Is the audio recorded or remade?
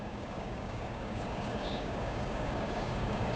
remade